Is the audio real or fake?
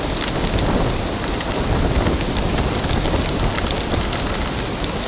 real